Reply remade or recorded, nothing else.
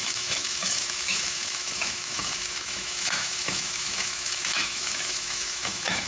remade